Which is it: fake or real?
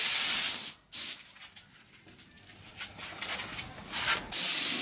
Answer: real